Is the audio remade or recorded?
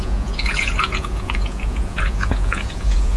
remade